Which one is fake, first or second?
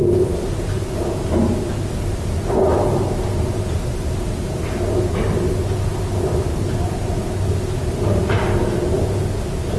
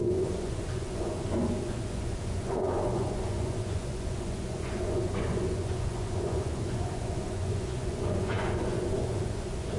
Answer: second